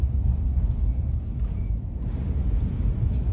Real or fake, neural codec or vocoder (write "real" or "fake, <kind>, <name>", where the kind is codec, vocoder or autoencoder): real